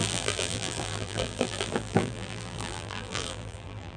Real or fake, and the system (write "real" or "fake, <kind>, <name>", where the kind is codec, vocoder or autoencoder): fake, vocoder, BigVGAN v2